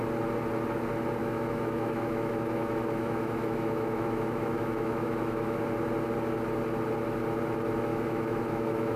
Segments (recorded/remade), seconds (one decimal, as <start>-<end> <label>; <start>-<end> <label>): 0.0-1.2 recorded; 1.2-5.6 remade; 5.6-7.9 recorded; 7.9-9.0 remade